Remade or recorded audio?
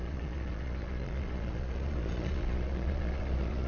remade